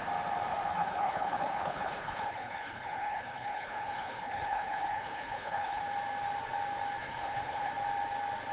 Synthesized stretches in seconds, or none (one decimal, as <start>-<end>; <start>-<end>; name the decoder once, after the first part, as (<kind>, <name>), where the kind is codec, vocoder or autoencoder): 0.7-5.8 (codec, HILCodec); 7.0-7.7